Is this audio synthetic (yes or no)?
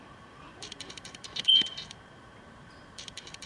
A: yes